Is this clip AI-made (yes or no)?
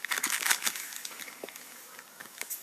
yes